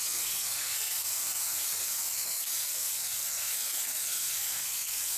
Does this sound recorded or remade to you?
remade